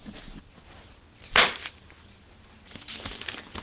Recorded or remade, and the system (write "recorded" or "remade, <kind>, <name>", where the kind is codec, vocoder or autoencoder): recorded